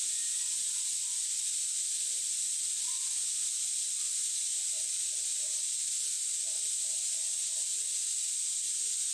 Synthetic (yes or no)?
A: no